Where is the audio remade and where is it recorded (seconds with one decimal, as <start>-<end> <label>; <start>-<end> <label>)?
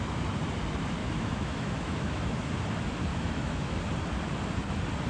0.0-1.0 recorded; 1.0-2.5 remade; 2.5-3.1 recorded; 3.1-3.8 remade; 3.8-5.1 recorded